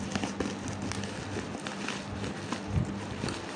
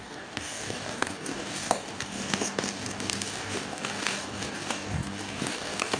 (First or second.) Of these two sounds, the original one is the first